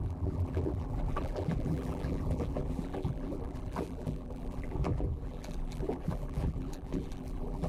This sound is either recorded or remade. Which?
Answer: remade